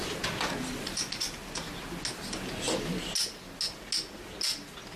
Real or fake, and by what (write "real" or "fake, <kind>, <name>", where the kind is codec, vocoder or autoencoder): real